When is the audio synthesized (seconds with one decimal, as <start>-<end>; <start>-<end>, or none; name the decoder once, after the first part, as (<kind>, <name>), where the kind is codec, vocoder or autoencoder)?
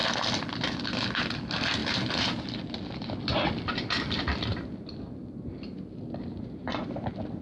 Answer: none